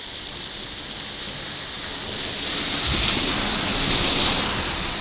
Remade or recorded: recorded